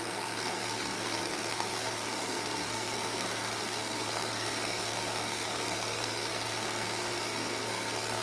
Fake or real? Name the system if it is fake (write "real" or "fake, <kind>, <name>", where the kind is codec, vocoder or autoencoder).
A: fake, codec, SNAC